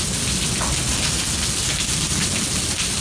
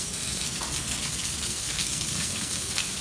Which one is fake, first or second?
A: second